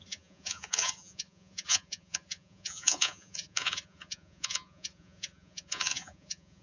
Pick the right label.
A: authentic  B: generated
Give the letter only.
B